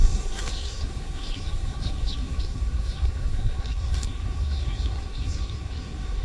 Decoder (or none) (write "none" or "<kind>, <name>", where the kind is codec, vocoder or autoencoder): codec, SNAC